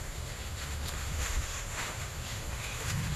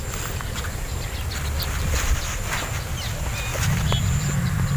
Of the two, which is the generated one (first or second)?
first